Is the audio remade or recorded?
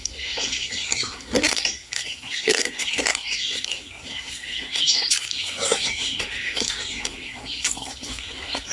remade